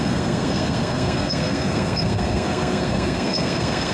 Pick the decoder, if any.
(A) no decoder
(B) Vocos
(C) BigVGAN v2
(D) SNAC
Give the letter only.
D